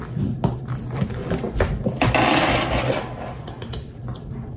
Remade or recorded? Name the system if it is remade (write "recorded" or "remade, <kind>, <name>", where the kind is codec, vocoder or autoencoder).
recorded